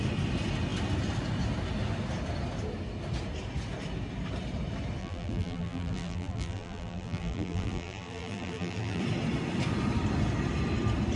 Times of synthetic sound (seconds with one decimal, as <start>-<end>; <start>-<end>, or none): 5.0-9.0